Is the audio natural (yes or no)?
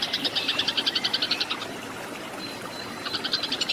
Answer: no